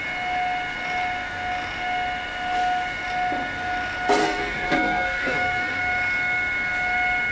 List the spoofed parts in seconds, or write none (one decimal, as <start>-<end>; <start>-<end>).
4.2-5.8